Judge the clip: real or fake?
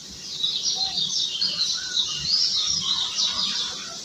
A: real